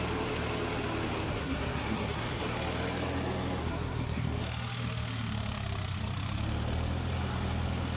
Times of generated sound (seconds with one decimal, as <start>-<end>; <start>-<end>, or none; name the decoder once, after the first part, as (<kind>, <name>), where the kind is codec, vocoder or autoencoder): 1.3-2.4 (codec, SNAC); 3.6-4.4